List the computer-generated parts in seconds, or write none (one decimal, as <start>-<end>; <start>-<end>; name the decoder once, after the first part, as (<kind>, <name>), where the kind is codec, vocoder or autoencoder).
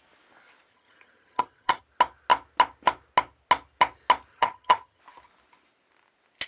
0.7-1.8 (vocoder, HiFi-GAN); 4.3-5.0